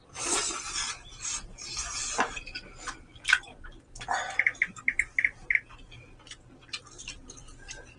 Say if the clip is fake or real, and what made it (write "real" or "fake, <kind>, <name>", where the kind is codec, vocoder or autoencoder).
fake, vocoder, BigVGAN v2